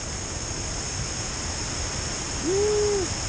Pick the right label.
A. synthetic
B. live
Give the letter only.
B